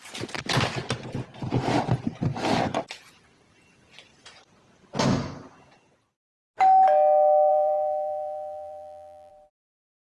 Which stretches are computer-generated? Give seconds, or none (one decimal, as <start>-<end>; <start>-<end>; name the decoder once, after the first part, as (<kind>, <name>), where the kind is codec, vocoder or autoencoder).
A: 7.5-9.3 (vocoder, BigVGAN v2)

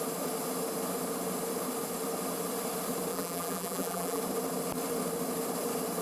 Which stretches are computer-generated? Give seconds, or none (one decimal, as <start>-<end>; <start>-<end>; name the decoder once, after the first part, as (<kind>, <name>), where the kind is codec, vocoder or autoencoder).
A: 3.1-4.2 (vocoder, BigVGAN v2)

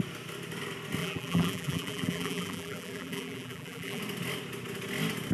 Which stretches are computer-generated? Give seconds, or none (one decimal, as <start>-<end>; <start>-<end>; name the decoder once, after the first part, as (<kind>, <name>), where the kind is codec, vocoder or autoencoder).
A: 1.0-4.0 (vocoder, BigVGAN v2)

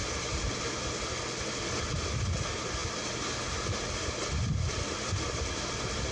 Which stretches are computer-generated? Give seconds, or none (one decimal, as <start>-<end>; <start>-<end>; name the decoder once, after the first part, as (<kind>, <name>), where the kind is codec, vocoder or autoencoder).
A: none

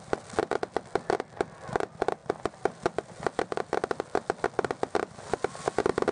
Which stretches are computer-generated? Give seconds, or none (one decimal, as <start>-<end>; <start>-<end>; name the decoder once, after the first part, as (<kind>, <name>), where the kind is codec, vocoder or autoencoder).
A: none

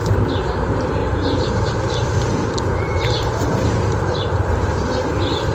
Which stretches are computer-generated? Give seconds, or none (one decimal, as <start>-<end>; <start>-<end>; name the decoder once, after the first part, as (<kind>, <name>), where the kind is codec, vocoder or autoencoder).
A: 0.0-5.5 (vocoder, BigVGAN v2)

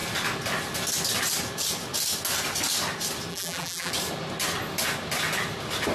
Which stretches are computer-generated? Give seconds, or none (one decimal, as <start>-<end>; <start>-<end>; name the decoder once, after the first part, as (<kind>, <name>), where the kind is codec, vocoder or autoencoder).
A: 3.3-3.9 (vocoder, BigVGAN v2)